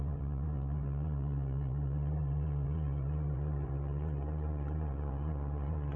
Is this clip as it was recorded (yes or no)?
no